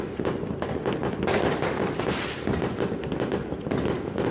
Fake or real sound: real